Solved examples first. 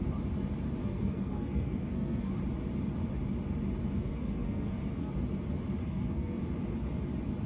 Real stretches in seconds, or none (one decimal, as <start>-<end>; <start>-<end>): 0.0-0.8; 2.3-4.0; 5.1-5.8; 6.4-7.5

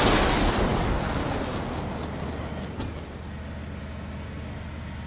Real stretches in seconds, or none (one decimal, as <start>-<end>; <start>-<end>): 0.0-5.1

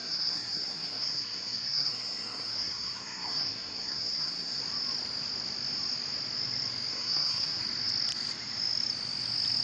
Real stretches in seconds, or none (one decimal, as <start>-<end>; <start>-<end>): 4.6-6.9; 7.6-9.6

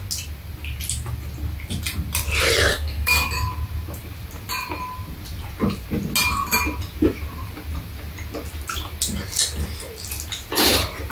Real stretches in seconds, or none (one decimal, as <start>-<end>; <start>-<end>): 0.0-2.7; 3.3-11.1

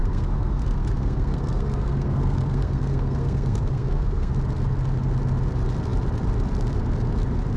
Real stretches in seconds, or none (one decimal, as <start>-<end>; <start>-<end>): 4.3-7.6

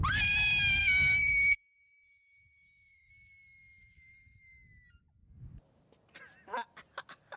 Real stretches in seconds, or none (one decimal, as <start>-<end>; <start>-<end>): 0.0-0.8; 3.1-7.4

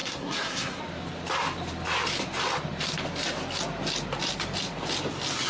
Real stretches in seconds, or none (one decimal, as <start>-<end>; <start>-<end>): 0.8-5.5